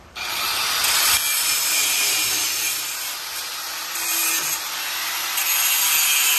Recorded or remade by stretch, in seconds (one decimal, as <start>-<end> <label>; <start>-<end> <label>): 0.0-0.5 remade; 0.5-1.3 recorded; 1.3-4.2 remade; 4.2-6.4 recorded